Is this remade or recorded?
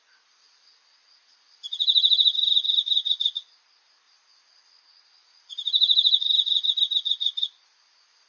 recorded